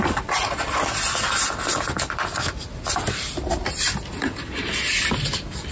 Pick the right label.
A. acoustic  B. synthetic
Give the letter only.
A